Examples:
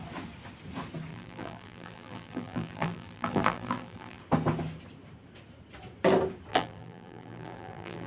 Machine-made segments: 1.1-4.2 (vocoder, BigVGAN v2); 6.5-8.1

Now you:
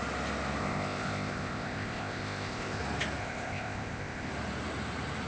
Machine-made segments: 0.6-2.8 (codec, ZipCodec); 3.2-4.3

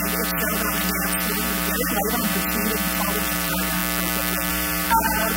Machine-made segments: 0.0-3.8 (vocoder, BigVGAN v2); 4.5-5.4

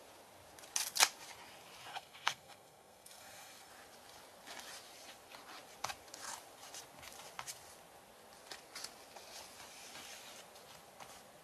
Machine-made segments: 1.9-3.7 (codec, SNAC)

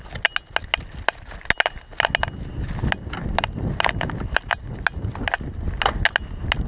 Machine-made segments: none

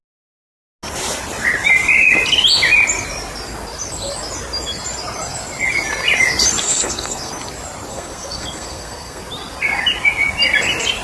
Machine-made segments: 6.6-7.3 (codec, SNAC); 7.9-9.2